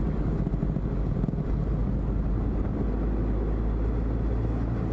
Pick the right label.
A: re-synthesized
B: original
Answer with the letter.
B